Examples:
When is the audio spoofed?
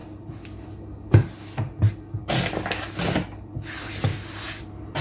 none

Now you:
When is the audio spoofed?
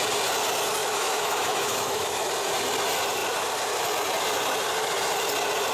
0.8-2.3 (autoencoder, DAC-VAE)